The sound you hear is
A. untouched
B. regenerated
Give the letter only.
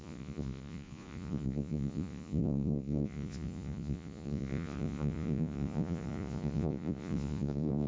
B